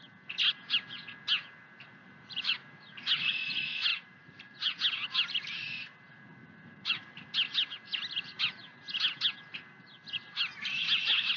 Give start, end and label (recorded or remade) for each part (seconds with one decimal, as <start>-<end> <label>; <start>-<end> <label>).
0.0-2.0 recorded; 2.0-2.6 remade; 2.6-3.9 recorded; 3.9-4.8 remade; 4.8-6.4 recorded; 6.4-7.0 remade; 7.0-11.4 recorded